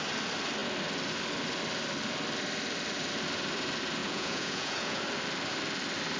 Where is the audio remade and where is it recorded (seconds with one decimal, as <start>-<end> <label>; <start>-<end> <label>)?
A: 0.0-4.0 recorded; 4.0-5.0 remade; 5.0-6.2 recorded